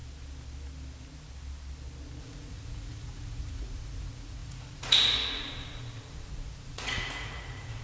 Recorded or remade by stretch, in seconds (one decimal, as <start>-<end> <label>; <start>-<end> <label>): 0.0-2.2 recorded; 2.2-7.8 remade